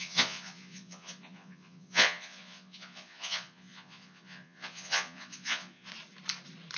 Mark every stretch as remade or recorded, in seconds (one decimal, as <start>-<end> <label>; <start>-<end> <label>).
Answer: 0.0-5.9 remade; 5.9-6.8 recorded